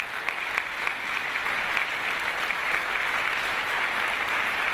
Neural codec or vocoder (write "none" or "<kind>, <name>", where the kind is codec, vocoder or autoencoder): none